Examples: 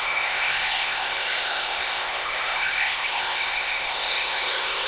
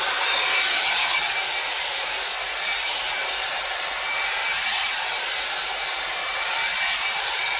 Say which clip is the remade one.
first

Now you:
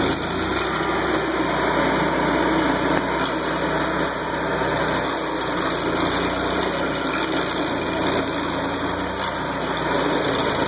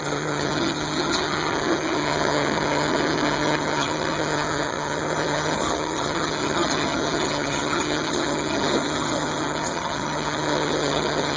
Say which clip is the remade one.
second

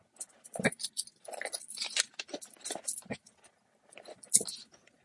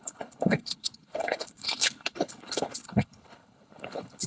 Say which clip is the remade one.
second